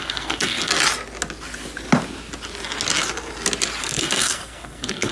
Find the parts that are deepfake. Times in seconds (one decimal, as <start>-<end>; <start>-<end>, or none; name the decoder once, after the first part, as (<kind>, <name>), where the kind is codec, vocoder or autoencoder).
0.0-0.7 (codec, SNAC); 3.8-5.1